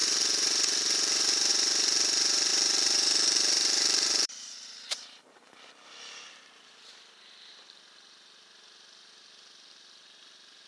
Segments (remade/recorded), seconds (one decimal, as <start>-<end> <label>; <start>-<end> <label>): 0.0-2.5 recorded; 2.5-6.9 remade; 6.9-10.7 recorded